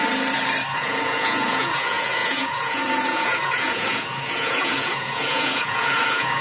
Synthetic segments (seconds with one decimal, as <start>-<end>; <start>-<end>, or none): 0.7-6.4